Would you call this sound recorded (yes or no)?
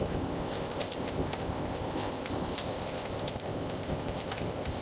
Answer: no